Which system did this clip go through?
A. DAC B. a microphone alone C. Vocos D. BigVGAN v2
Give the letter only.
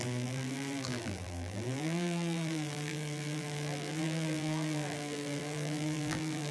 D